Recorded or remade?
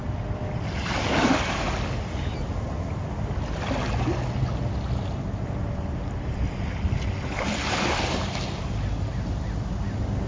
recorded